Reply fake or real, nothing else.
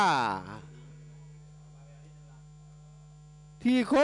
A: real